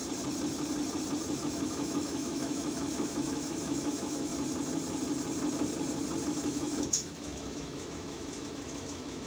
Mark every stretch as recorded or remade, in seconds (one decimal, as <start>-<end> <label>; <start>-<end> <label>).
0.0-1.4 recorded; 1.4-4.3 remade; 4.3-6.2 recorded; 6.2-9.3 remade